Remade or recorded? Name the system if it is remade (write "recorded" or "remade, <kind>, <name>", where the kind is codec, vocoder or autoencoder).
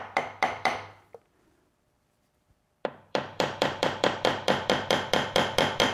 remade, vocoder, BigVGAN v2